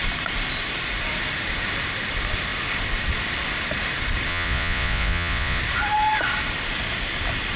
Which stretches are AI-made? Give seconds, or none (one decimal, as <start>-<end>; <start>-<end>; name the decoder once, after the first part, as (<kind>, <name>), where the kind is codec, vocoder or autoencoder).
4.3-5.6 (vocoder, Vocos)